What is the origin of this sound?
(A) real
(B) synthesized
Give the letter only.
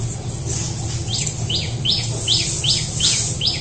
A